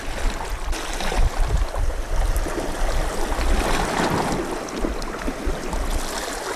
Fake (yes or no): no